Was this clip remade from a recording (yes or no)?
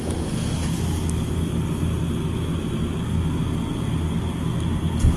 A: no